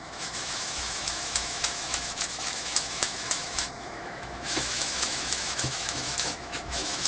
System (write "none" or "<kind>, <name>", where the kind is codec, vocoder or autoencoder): autoencoder, DAC-VAE